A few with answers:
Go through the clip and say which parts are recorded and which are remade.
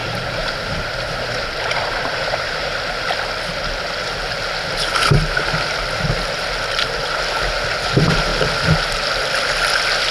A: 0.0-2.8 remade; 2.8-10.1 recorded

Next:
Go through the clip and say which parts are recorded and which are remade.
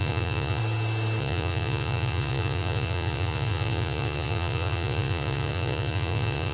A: 0.0-0.6 remade; 0.6-1.2 recorded; 1.2-6.5 remade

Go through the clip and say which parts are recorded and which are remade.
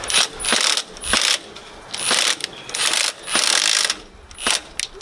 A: 0.0-5.0 recorded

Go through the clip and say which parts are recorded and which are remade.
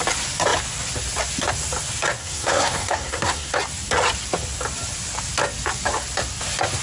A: 0.0-2.2 recorded; 2.2-3.5 remade; 3.5-6.8 recorded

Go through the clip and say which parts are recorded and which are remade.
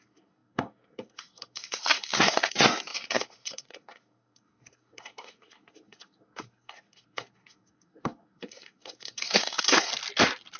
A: 0.0-9.9 remade; 9.9-10.6 recorded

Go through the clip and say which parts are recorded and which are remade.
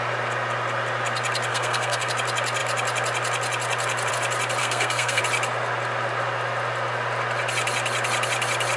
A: 0.0-1.5 recorded; 1.5-2.1 remade; 2.1-4.6 recorded; 4.6-5.2 remade; 5.2-8.8 recorded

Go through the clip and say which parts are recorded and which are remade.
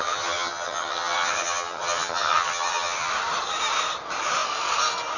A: 0.0-3.1 remade; 3.1-5.2 recorded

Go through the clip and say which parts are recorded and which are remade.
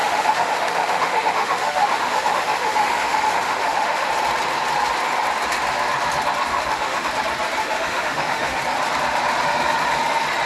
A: 0.0-4.1 remade; 4.1-6.5 recorded; 6.5-7.1 remade; 7.1-7.6 recorded; 7.6-8.6 remade; 8.6-10.5 recorded